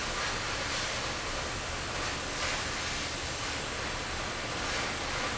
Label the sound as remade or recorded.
recorded